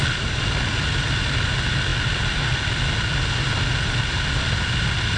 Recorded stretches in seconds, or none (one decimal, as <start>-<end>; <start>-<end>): 0.0-5.2